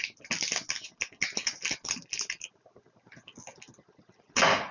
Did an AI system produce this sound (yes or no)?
no